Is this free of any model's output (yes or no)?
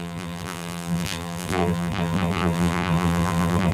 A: no